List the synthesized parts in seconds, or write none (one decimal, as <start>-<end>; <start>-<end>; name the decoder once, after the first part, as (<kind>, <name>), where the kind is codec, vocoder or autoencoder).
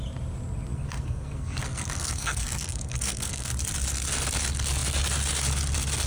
0.7-3.5 (codec, SNAC)